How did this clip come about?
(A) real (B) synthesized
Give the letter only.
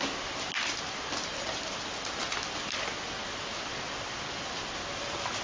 A